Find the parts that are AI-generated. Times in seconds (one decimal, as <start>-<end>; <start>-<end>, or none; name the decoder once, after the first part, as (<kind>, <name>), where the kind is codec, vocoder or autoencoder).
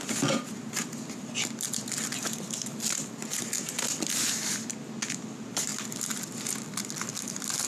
none